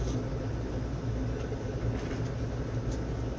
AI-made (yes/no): no